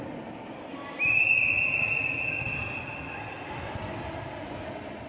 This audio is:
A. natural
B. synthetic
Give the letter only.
A